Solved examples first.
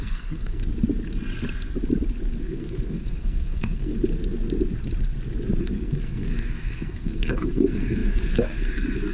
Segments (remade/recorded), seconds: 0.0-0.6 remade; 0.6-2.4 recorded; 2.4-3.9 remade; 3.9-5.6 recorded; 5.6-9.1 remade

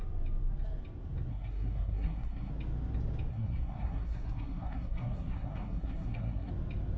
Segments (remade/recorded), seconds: 0.0-1.3 recorded; 1.3-2.5 remade; 2.5-3.3 recorded; 3.3-6.5 remade; 6.5-7.0 recorded

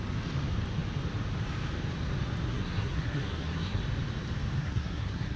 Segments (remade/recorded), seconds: 0.0-2.5 recorded; 2.5-3.8 remade; 3.8-4.6 recorded; 4.6-5.4 remade

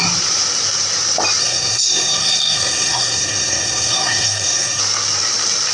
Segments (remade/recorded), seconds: 0.0-1.4 recorded; 1.4-4.8 remade; 4.8-5.7 recorded